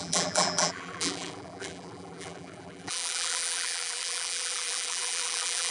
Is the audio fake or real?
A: fake